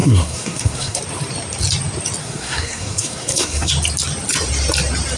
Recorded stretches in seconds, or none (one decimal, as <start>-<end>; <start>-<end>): 1.0-2.2; 3.7-5.2